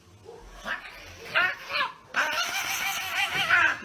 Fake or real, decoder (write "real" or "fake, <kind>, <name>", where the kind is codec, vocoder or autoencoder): real